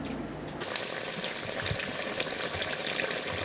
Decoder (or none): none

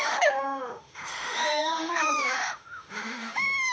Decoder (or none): autoencoder, DAC-VAE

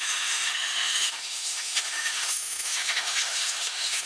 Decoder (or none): autoencoder, DAC-VAE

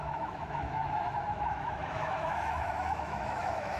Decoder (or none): autoencoder, DAC-VAE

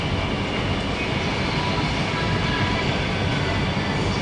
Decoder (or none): none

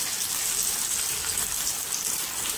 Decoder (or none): none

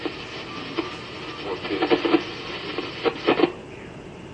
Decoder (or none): none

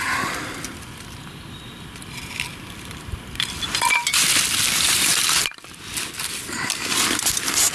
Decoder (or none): none